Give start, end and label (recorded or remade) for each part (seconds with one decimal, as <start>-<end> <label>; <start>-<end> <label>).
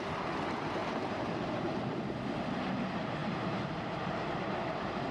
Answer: 0.0-0.8 recorded; 0.8-2.0 remade; 2.0-3.2 recorded; 3.2-5.1 remade